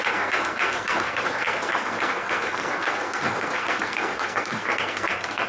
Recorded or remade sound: remade